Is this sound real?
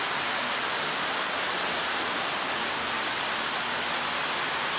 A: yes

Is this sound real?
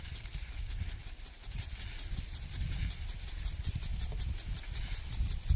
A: yes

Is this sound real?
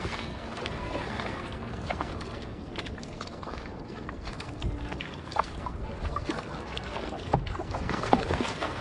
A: no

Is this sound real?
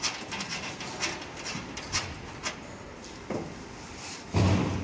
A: yes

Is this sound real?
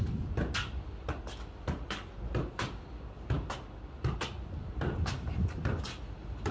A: yes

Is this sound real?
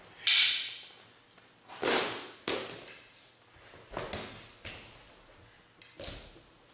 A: yes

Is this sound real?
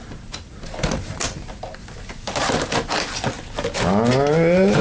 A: yes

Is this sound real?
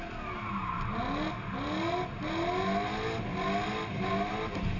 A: yes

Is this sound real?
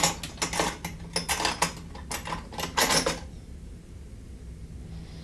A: yes